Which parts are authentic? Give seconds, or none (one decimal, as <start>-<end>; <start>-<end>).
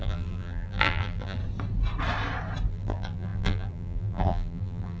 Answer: 1.4-2.7